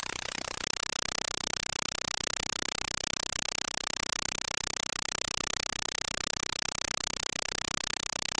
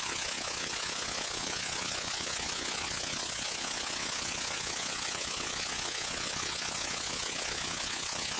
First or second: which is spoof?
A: second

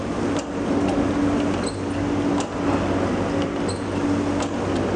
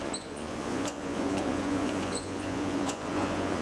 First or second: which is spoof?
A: second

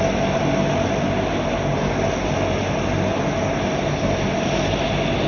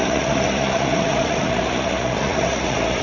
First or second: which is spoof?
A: second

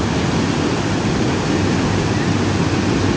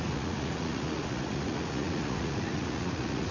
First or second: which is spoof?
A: second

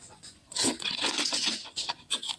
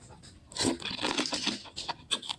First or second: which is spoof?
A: first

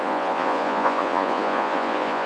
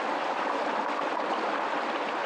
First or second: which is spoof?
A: first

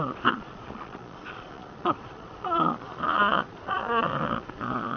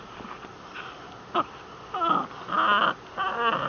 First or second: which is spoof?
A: first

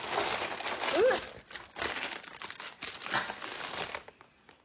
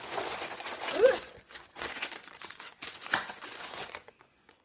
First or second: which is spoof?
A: second